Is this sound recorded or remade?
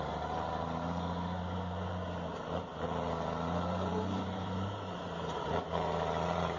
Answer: remade